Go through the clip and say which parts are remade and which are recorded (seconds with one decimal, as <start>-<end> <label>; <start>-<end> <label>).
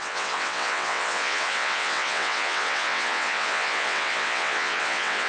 0.0-5.3 remade